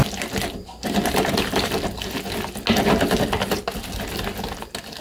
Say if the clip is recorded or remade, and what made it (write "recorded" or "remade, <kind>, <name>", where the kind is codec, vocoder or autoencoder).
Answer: recorded